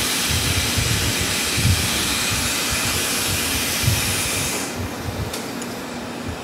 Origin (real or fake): real